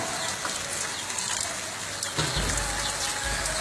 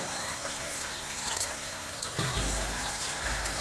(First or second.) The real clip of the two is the first